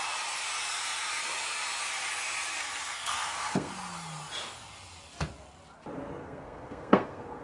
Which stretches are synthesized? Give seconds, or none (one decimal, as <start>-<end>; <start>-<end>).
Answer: 2.6-3.7; 6.2-7.4